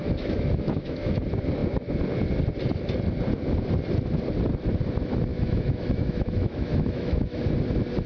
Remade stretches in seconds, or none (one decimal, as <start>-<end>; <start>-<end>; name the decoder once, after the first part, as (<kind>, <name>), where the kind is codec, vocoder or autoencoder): 0.0-1.1 (autoencoder, DAC-VAE); 5.3-7.4